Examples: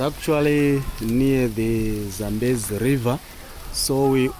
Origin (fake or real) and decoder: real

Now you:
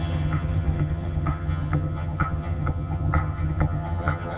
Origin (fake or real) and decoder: fake, vocoder, HiFi-GAN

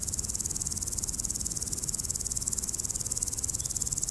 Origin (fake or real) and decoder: real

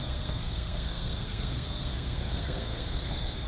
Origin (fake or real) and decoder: fake, codec, SNAC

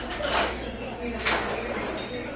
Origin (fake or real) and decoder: real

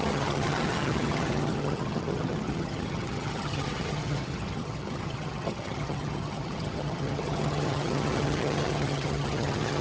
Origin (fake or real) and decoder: fake, vocoder, HiFi-GAN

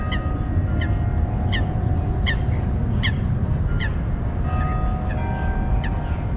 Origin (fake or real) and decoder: real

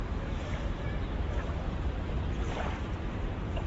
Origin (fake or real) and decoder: fake, vocoder, BigVGAN v2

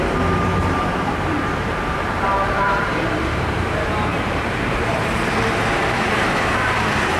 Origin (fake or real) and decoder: fake, vocoder, BigVGAN v2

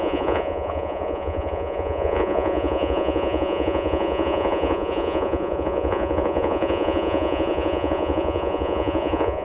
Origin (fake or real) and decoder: fake, vocoder, Vocos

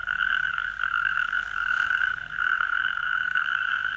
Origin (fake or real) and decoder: fake, codec, SNAC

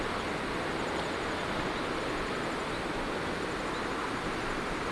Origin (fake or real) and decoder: real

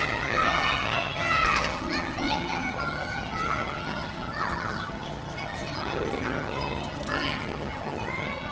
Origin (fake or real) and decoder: fake, vocoder, HiFi-GAN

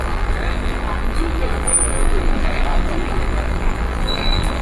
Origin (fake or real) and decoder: fake, vocoder, BigVGAN v2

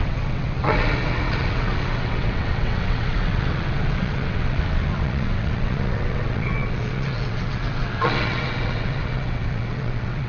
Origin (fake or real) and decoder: fake, vocoder, WaveNeXt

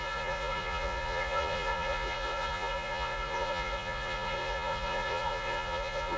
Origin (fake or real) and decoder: fake, vocoder, Vocos